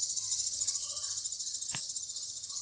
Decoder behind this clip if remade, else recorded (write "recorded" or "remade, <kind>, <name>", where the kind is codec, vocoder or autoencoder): remade, vocoder, HiFi-GAN